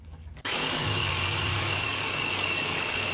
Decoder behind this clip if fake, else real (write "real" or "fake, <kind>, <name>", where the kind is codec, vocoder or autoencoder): fake, codec, DAC